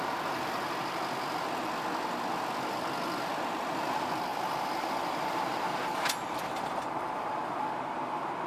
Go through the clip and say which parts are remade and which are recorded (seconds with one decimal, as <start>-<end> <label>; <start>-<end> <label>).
0.0-8.5 recorded